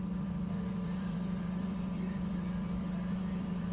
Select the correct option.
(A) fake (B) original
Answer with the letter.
A